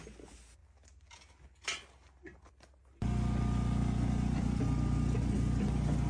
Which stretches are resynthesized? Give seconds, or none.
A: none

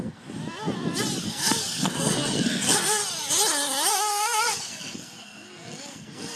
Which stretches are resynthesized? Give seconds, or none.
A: 0.0-0.4; 1.2-3.0; 3.9-6.4

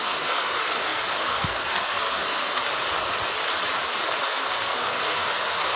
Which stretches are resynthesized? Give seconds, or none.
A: 0.0-2.6; 4.2-5.8

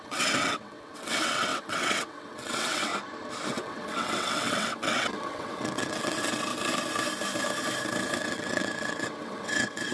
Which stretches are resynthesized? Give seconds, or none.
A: 0.0-2.9; 3.5-6.5; 8.2-9.9

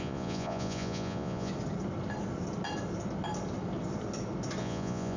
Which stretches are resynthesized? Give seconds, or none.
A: 0.0-1.5; 4.6-5.2

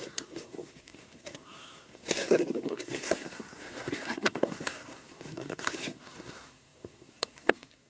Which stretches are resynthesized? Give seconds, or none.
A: 0.0-7.9

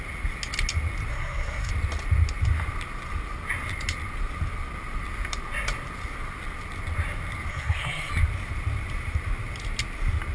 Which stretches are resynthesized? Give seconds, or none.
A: 1.1-1.7; 7.5-8.1